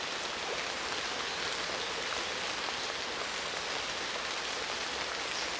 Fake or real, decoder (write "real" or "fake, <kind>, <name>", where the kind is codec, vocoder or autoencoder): real